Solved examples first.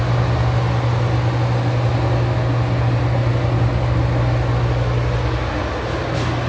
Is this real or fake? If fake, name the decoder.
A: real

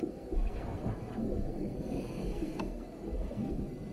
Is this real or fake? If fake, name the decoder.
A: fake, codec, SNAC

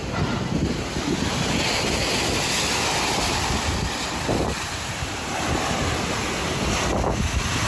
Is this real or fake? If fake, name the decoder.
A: real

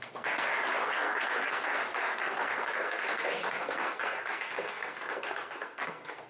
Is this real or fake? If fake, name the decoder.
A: fake, codec, SNAC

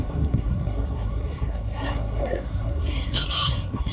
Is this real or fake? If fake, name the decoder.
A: fake, codec, SNAC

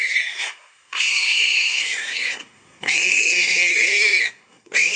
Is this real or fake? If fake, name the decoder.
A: fake, codec, SNAC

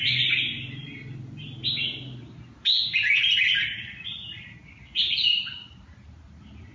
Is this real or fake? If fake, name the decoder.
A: real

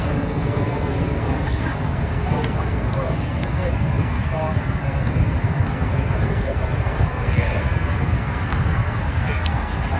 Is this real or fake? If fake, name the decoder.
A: fake, codec, SNAC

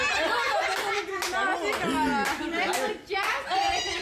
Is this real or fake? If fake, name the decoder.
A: real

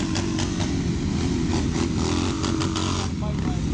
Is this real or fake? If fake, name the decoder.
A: real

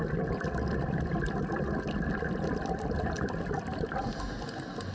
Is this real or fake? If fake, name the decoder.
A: real